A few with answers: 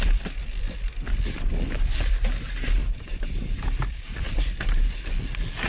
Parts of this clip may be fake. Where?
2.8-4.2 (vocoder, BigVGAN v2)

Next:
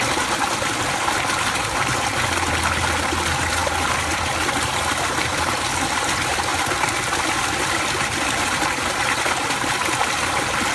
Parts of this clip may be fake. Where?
6.5-8.6 (vocoder, BigVGAN v2)

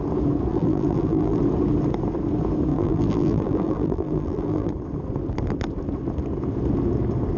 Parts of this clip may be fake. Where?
0.5-1.4 (vocoder, BigVGAN v2); 2.7-4.7